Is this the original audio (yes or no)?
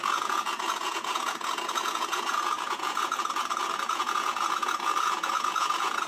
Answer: no